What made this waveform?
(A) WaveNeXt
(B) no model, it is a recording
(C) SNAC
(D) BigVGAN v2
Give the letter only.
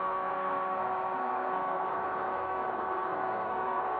C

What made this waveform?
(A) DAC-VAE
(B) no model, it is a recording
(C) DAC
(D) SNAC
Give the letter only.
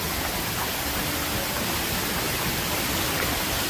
B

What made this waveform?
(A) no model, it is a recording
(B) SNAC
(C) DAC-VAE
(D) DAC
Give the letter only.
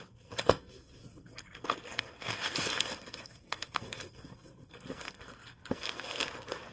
B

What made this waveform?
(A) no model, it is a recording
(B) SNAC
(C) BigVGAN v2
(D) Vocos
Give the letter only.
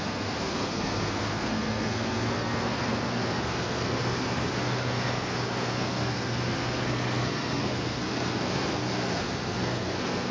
B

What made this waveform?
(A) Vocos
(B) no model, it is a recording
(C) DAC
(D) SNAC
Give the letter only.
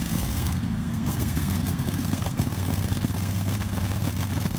D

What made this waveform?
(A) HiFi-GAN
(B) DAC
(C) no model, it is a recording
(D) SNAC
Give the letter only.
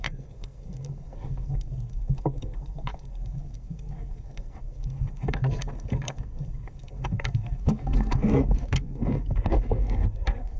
D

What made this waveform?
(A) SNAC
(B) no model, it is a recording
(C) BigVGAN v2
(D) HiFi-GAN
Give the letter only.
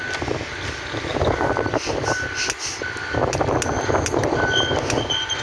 B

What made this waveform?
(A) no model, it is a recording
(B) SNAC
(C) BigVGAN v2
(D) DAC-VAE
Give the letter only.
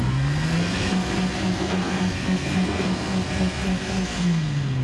B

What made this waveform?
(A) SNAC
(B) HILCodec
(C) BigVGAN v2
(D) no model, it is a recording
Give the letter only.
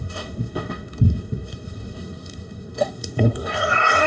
A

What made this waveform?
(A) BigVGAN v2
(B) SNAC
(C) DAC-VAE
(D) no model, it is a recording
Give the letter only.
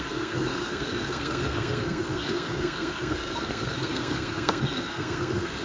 B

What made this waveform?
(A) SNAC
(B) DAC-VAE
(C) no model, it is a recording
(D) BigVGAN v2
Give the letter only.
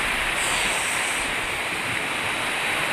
C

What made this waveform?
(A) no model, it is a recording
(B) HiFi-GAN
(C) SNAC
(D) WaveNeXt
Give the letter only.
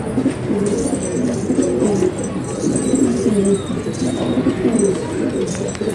A